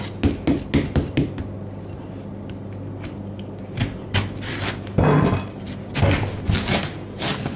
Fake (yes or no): no